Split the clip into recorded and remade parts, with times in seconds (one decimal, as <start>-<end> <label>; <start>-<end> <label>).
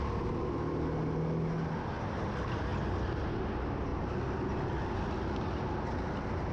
0.0-6.5 recorded